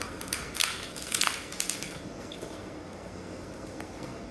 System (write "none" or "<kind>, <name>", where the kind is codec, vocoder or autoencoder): codec, SNAC